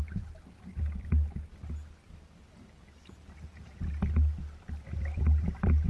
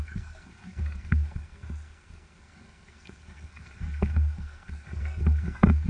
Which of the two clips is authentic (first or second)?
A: first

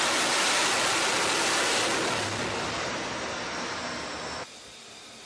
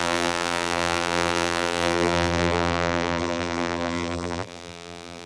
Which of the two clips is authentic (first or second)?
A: first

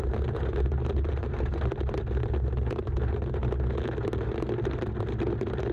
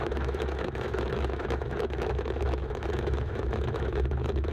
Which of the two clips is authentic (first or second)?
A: first